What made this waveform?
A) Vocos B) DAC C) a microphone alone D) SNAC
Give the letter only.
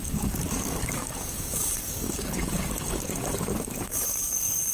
B